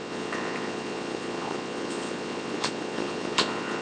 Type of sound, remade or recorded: remade